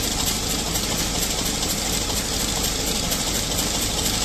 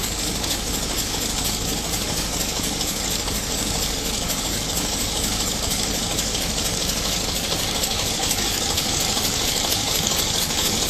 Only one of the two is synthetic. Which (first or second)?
second